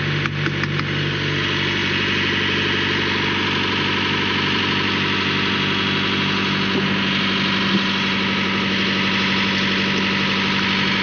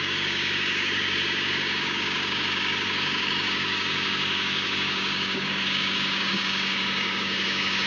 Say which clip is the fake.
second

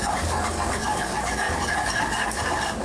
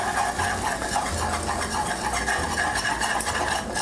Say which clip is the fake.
first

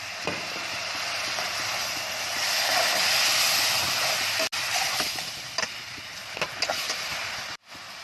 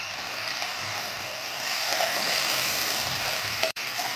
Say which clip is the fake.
second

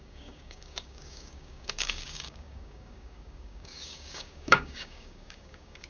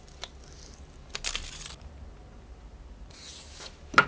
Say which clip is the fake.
first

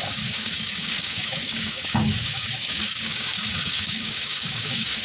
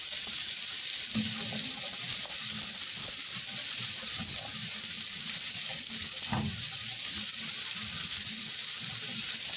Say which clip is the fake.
first